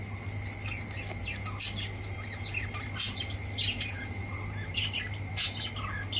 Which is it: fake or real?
real